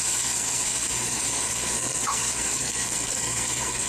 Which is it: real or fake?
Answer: fake